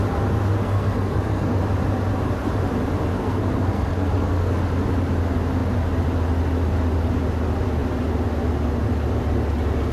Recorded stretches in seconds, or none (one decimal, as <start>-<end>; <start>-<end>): 0.0-0.6; 1.6-3.1; 4.6-9.9